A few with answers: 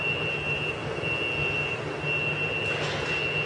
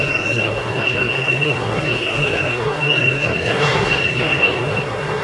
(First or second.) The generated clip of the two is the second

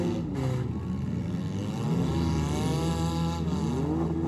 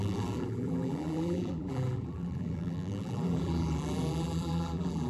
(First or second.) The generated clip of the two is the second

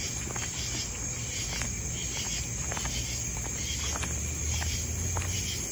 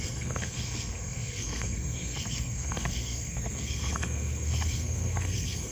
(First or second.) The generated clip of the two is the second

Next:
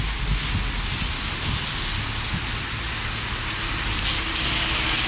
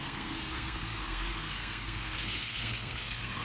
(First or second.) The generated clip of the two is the second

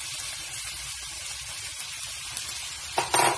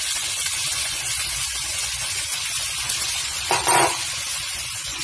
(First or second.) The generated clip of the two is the second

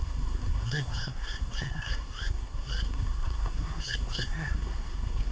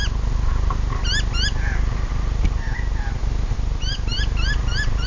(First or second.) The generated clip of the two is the first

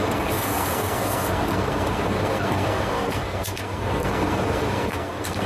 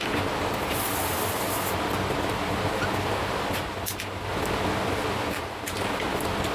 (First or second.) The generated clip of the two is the first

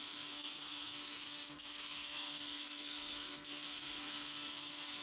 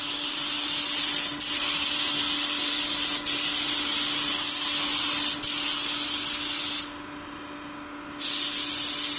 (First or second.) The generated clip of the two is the first